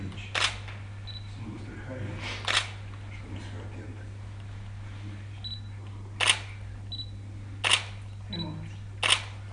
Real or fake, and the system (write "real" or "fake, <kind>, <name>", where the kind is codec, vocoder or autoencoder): real